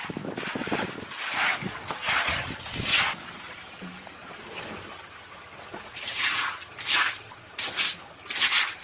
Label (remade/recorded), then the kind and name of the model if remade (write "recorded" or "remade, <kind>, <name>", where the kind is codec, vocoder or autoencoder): recorded